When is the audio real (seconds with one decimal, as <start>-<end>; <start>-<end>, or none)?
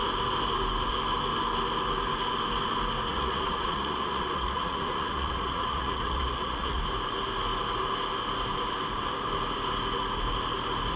0.0-3.1; 6.8-11.0